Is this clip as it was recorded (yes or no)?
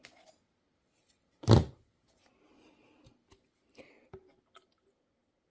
yes